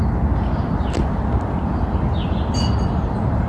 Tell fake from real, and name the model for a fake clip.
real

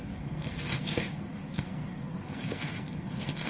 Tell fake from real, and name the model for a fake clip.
fake, codec, SNAC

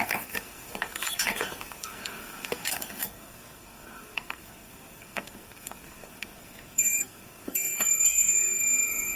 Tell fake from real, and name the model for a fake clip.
fake, codec, SNAC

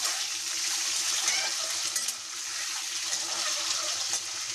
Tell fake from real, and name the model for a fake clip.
real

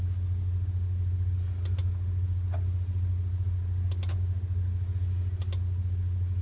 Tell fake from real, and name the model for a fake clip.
real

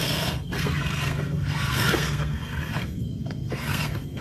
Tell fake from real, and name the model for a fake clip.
fake, codec, SNAC